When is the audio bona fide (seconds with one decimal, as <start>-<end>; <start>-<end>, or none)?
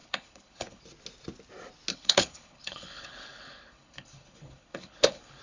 0.8-1.9